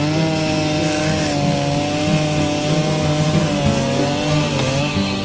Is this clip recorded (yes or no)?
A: yes